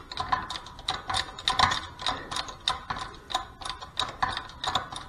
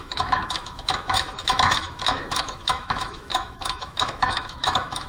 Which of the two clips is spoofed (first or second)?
second